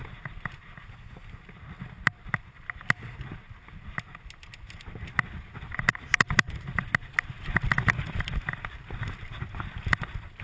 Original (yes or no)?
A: yes